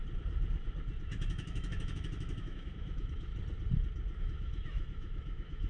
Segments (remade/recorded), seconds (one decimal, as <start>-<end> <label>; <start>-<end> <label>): 0.0-1.3 recorded; 1.3-3.3 remade; 3.3-4.2 recorded; 4.2-5.7 remade